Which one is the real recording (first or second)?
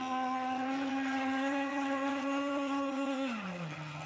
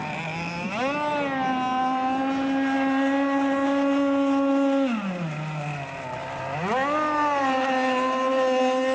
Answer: second